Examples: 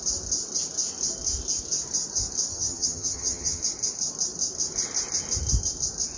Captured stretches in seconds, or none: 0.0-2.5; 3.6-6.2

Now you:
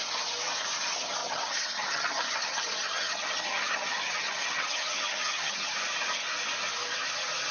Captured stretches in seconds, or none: 0.0-1.2; 5.7-7.5